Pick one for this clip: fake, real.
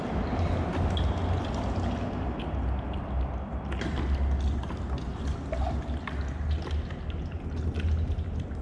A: real